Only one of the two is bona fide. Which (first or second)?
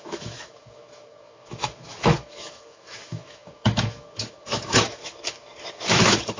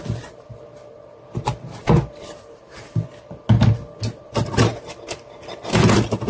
second